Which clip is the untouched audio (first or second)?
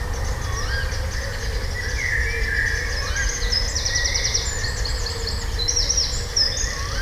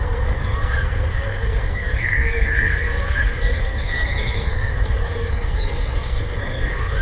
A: first